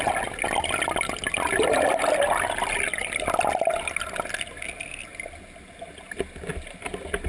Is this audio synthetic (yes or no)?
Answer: no